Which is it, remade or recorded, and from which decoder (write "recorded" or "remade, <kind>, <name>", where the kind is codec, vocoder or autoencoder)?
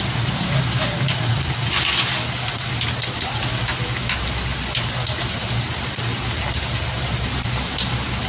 recorded